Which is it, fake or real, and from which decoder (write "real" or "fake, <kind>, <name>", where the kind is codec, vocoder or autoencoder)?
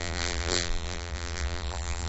fake, vocoder, BigVGAN v2